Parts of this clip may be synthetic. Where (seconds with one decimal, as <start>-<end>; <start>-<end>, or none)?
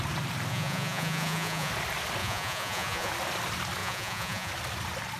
0.5-1.7; 2.2-3.1; 3.8-4.5